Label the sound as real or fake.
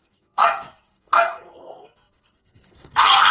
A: fake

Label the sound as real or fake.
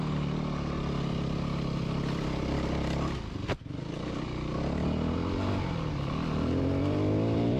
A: real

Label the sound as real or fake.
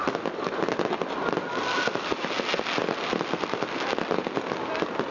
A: real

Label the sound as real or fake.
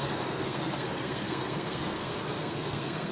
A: fake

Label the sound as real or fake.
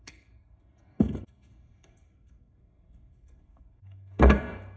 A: fake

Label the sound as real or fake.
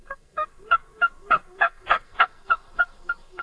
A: fake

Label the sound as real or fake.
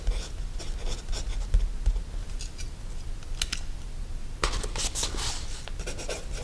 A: real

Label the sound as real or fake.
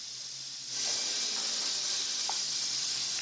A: real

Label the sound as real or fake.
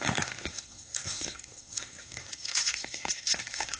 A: fake